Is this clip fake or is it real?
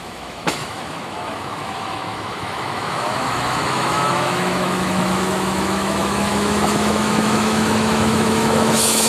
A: fake